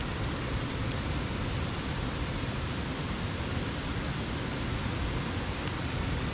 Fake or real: real